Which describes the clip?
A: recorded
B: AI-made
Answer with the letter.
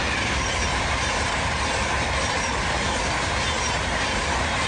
B